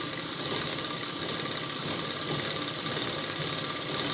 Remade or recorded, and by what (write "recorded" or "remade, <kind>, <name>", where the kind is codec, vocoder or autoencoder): remade, vocoder, BigVGAN v2